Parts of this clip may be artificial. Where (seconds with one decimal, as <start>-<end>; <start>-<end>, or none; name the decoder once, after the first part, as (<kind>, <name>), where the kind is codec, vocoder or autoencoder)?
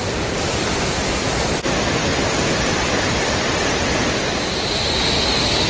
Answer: 0.0-5.7 (vocoder, BigVGAN v2)